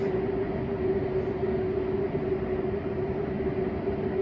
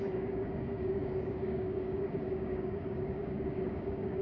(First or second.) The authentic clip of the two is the first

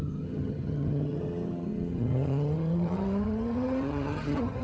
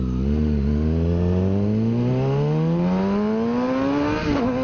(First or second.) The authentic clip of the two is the second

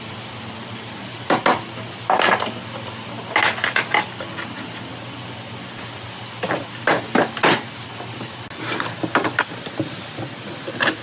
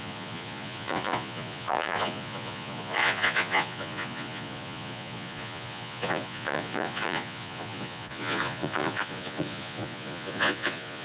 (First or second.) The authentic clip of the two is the first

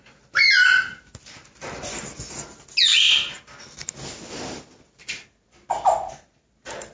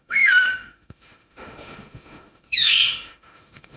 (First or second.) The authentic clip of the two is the first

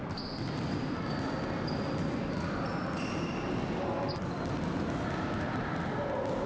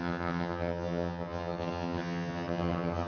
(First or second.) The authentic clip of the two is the first